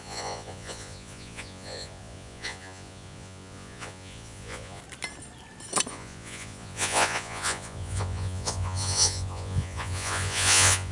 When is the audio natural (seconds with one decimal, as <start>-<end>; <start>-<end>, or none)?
4.8-5.9